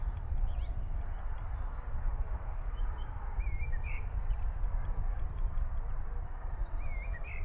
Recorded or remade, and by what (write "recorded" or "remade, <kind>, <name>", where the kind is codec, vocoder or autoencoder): remade, vocoder, BigVGAN v2